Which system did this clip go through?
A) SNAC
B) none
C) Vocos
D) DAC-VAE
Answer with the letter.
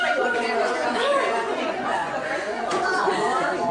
C